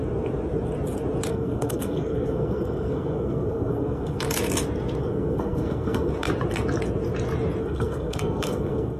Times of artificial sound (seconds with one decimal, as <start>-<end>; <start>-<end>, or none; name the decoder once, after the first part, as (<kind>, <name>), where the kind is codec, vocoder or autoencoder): 1.3-4.2 (codec, SNAC); 5.0-6.1; 7.6-9.0

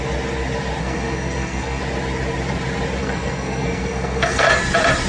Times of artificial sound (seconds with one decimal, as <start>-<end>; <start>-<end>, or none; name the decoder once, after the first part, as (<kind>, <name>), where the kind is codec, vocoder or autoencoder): 0.8-1.8 (codec, SNAC); 3.0-4.5